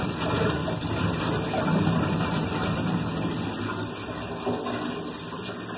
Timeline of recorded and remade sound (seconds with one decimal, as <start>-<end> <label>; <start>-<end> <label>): 0.0-0.6 recorded; 0.6-4.1 remade; 4.1-5.8 recorded